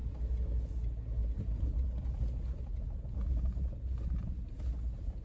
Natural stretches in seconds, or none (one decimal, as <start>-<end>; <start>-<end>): 0.0-5.2